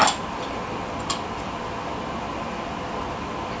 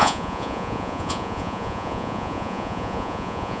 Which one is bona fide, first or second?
first